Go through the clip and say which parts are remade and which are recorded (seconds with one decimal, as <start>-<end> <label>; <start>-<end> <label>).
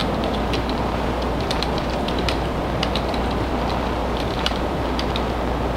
0.0-3.5 remade; 3.5-4.0 recorded; 4.0-5.1 remade; 5.1-5.8 recorded